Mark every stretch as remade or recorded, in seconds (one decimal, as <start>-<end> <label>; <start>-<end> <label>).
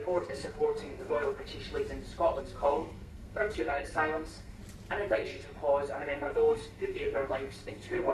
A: 0.0-1.5 remade; 1.5-2.4 recorded; 2.4-4.6 remade; 4.6-5.1 recorded; 5.1-5.5 remade; 5.5-6.0 recorded; 6.0-8.1 remade